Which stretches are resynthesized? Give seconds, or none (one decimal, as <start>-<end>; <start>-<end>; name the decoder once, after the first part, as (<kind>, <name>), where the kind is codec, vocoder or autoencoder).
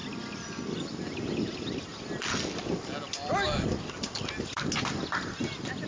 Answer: none